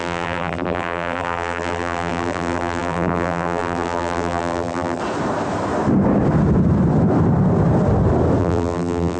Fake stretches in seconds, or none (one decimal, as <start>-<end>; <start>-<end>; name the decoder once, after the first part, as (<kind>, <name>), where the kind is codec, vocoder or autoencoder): 0.0-5.0 (vocoder, BigVGAN v2); 8.4-9.2